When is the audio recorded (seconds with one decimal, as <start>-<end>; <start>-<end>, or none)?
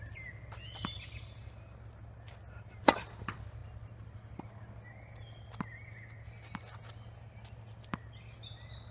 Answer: 0.0-8.9